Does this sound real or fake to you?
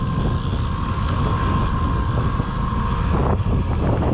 real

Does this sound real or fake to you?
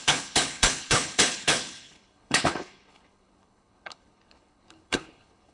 fake